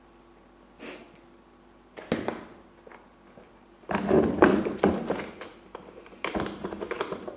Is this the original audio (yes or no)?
yes